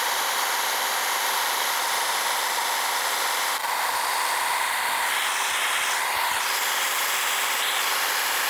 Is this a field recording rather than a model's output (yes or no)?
yes